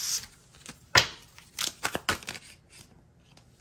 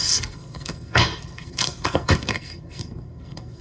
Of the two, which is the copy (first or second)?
second